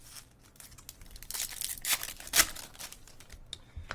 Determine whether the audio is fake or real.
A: real